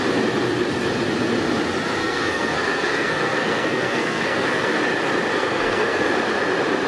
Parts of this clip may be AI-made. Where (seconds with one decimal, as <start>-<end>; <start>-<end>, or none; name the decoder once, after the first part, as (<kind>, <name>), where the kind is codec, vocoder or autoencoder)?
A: 2.0-4.8 (codec, SNAC); 5.3-6.1